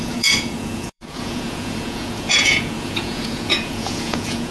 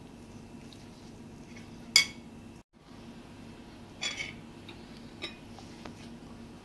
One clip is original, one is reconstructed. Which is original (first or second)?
second